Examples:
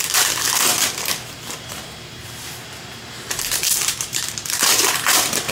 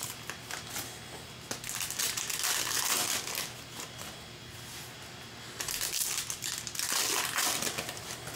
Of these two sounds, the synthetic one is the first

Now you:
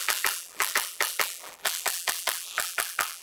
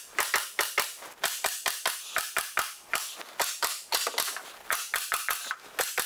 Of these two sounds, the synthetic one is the first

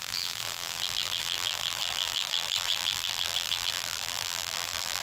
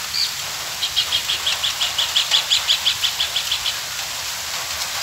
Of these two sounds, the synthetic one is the first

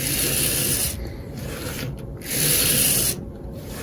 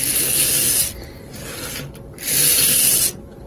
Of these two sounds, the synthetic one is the first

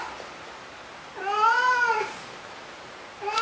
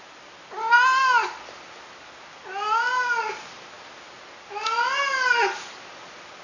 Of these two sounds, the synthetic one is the first